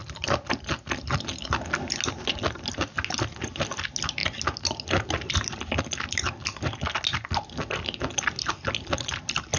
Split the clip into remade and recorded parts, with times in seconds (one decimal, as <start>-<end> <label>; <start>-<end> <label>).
0.0-9.6 recorded